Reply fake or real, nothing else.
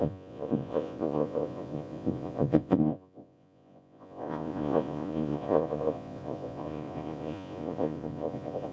fake